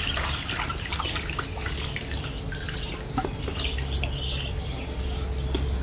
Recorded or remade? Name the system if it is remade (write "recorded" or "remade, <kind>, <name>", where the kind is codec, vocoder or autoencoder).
recorded